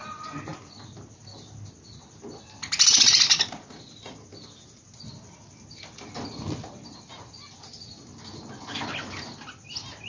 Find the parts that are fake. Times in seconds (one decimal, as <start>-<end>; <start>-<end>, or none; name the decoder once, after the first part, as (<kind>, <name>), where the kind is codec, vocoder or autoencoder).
none